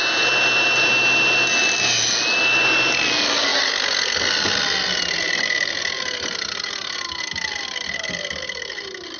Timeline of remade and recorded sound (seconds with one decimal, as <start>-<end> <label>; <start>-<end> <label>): 0.0-9.2 recorded

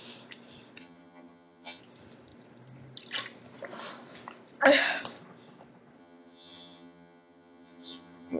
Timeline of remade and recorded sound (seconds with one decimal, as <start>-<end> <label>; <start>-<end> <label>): 0.0-0.8 recorded; 0.8-1.8 remade; 1.8-6.0 recorded; 6.0-8.4 remade

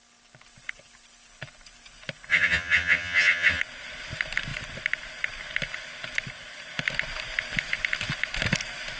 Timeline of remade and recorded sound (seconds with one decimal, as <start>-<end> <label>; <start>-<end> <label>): 0.0-2.3 recorded; 2.3-3.6 remade; 3.6-9.0 recorded

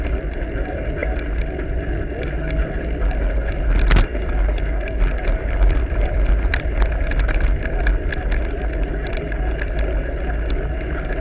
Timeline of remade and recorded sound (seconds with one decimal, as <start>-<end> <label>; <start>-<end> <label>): 0.0-11.2 recorded

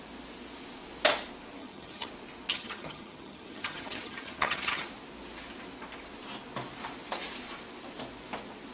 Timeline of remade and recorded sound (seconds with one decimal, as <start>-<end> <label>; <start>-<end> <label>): 0.0-1.6 recorded; 1.6-2.1 remade; 2.1-2.5 recorded; 2.5-4.8 remade; 4.8-8.7 recorded

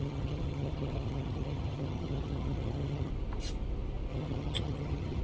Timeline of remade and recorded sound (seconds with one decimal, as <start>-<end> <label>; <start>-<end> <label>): 0.0-3.1 remade; 3.1-4.1 recorded; 4.1-5.2 remade

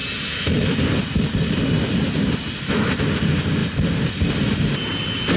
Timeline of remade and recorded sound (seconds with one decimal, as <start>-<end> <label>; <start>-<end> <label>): 0.0-5.4 recorded

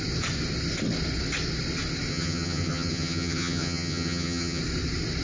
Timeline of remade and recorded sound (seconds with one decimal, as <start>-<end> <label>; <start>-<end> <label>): 0.0-2.1 recorded; 2.1-4.6 remade; 4.6-5.2 recorded